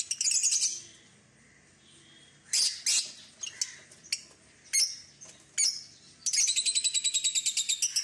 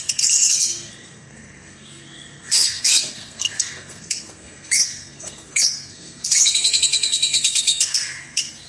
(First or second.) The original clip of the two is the first